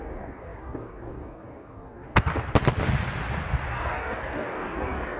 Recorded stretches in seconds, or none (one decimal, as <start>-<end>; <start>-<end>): 2.3-3.7